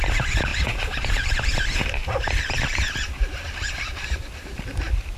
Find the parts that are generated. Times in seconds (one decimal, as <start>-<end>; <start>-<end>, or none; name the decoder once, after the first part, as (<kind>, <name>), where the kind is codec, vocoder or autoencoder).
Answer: none